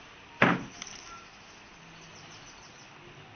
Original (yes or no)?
yes